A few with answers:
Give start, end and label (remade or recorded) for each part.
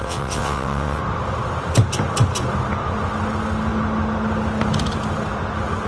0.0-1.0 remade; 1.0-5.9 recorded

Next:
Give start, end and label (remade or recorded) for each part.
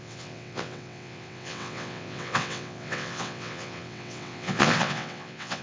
0.0-5.6 remade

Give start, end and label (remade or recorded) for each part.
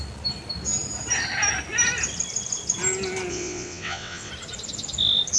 0.0-3.3 recorded; 3.3-4.3 remade; 4.3-5.4 recorded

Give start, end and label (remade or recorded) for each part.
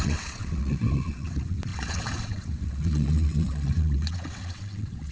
0.0-5.1 remade